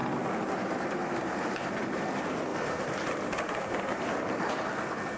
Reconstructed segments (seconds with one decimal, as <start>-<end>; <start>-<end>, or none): 0.0-2.0; 2.5-4.5